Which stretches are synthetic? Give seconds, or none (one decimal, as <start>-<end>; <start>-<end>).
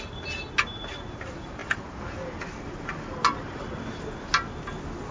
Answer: none